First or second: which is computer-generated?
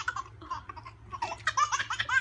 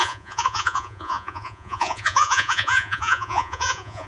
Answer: second